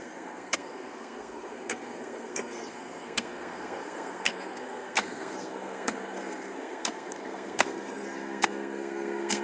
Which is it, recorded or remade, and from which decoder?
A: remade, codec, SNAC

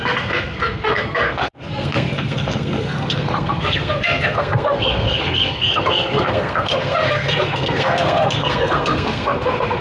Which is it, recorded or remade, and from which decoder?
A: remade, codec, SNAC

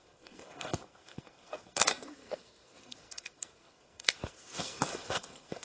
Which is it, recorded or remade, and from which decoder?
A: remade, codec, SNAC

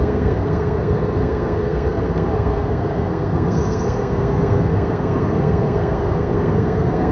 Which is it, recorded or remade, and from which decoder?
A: remade, codec, SNAC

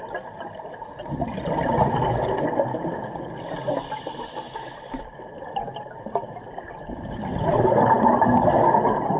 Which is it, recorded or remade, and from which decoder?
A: recorded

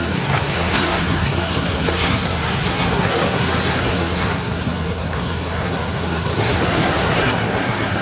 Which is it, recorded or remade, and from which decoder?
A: remade, codec, SNAC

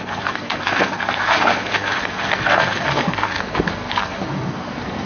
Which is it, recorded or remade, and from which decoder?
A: remade, codec, SNAC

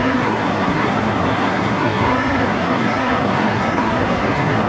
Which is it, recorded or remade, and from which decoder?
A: remade, codec, SNAC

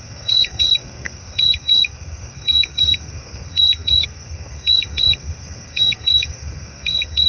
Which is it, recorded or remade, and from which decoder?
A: remade, codec, SNAC